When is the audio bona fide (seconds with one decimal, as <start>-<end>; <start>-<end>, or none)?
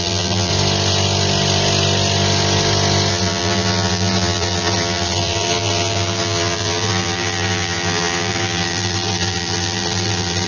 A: 0.5-3.1